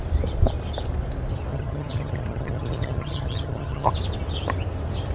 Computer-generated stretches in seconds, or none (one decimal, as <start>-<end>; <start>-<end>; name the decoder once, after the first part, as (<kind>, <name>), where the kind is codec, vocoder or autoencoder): 1.5-3.9 (vocoder, HiFi-GAN)